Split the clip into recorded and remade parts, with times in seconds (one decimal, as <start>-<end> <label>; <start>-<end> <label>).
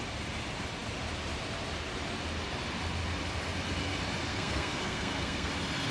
0.0-4.3 recorded; 4.3-5.5 remade; 5.5-5.9 recorded